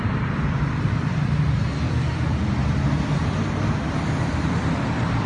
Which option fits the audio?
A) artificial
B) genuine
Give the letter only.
A